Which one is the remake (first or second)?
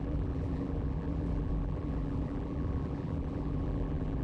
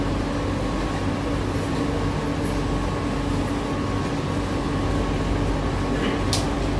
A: first